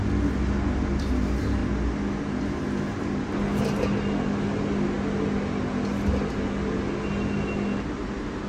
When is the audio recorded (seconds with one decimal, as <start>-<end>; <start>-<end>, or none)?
0.0-8.5

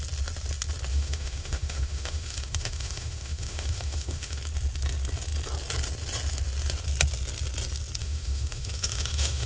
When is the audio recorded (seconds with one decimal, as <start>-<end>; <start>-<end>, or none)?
0.0-0.9; 4.4-8.0

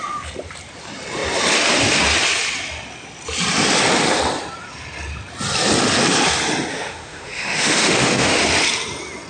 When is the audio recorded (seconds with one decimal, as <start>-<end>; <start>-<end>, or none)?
0.0-6.7; 8.4-9.3

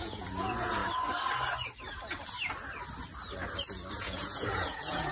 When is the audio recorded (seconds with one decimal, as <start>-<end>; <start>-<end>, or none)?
0.8-3.9

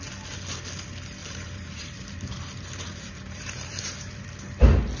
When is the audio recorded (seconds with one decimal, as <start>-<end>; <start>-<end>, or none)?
0.0-1.2; 4.2-5.0

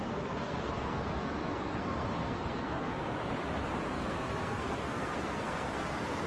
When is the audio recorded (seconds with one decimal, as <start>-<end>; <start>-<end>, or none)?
3.2-3.9